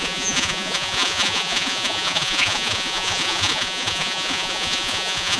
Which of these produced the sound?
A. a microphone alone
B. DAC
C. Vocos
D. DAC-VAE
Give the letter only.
C